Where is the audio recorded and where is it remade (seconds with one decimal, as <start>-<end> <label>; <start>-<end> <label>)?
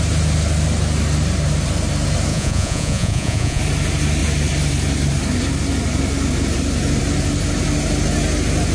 0.0-2.3 recorded; 2.3-3.6 remade; 3.6-8.7 recorded